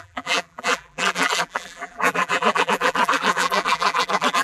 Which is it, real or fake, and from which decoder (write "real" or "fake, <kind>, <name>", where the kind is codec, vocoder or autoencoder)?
fake, vocoder, BigVGAN v2